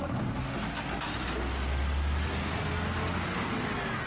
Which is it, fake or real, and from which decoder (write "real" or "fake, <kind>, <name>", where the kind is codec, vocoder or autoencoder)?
real